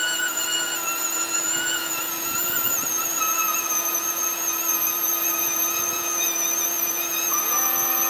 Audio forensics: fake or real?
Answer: fake